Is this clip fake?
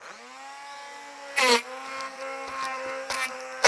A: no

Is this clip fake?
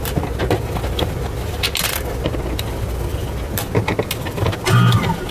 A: no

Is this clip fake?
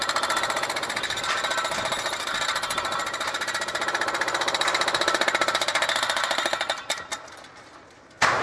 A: no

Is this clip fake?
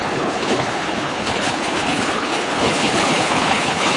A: yes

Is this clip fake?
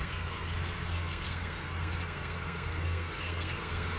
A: yes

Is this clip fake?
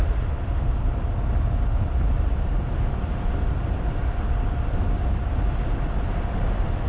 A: no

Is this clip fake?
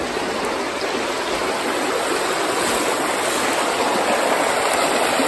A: no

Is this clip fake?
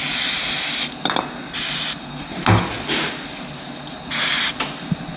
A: no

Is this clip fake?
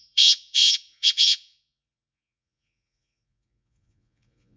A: yes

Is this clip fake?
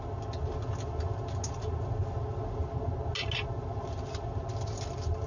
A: no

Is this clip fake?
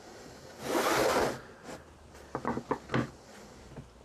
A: no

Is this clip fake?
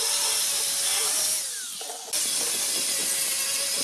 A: no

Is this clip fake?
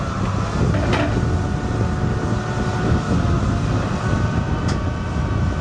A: no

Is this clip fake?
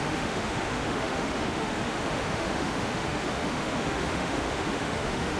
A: yes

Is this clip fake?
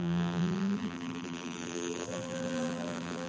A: yes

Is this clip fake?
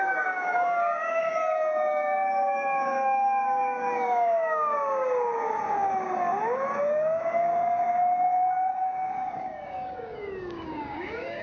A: yes